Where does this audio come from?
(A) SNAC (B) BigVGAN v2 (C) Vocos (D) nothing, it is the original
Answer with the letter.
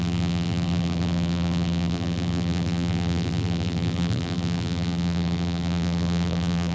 B